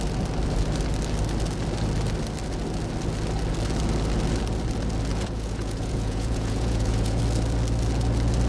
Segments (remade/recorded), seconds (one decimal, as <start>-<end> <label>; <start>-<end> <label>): 0.0-5.1 recorded; 5.1-7.2 remade; 7.2-8.5 recorded